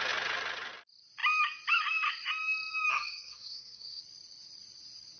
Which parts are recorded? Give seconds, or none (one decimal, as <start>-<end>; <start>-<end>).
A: 0.0-2.9; 4.0-5.2